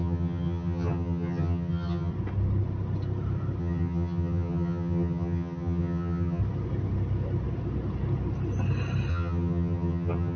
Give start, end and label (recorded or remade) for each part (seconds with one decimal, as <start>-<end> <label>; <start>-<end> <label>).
0.0-2.1 remade; 2.1-3.6 recorded; 3.6-6.4 remade; 6.4-9.1 recorded; 9.1-10.4 remade